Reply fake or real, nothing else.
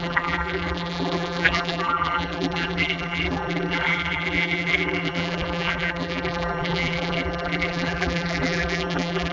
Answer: fake